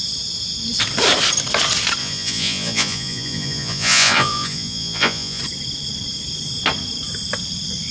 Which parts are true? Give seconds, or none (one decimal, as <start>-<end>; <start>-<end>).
0.0-2.0; 5.4-7.9